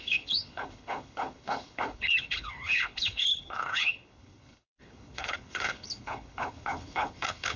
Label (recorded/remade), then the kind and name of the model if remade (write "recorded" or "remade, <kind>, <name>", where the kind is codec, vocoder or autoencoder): remade, codec, HILCodec